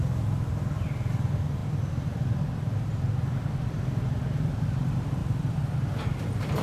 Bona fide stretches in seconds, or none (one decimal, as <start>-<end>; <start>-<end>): none